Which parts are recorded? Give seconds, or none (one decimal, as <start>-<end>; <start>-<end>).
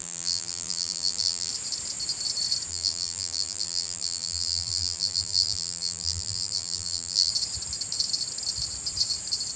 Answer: 1.5-2.7; 7.3-9.6